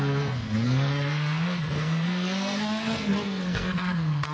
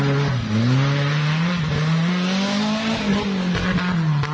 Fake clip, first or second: first